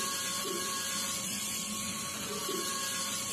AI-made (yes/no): yes